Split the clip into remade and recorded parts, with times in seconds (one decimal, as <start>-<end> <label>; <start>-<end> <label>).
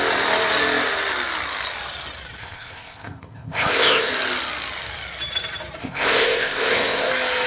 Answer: 0.0-2.4 recorded; 2.4-4.1 remade; 4.1-5.8 recorded; 5.8-7.1 remade; 7.1-7.5 recorded